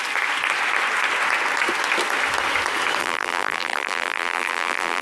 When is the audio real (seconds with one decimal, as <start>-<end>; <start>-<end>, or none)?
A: 0.0-3.0